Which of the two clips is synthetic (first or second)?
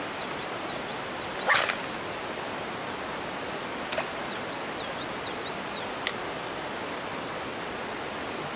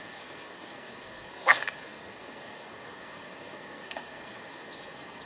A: second